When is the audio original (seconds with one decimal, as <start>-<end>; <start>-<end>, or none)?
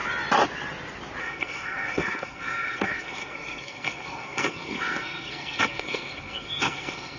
0.0-1.2